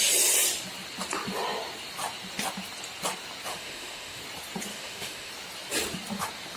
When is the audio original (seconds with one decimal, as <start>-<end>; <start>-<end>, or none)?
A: 0.0-3.5; 4.2-4.7; 5.3-6.6